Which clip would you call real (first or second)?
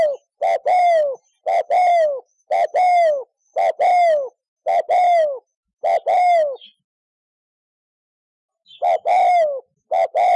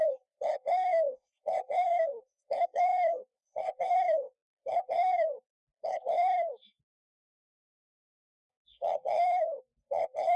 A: first